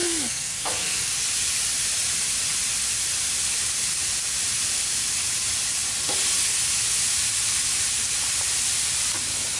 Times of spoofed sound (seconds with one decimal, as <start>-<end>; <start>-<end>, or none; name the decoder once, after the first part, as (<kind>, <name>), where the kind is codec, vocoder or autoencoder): 0.0-1.0 (codec, SNAC)